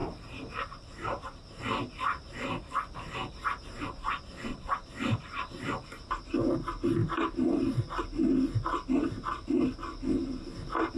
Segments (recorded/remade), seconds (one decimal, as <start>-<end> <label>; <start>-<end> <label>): 0.0-1.8 remade; 1.8-3.2 recorded; 3.2-4.2 remade; 4.2-7.0 recorded; 7.0-8.0 remade; 8.0-11.0 recorded